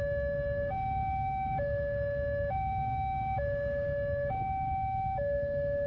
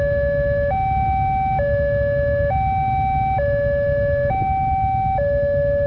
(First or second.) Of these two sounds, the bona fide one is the second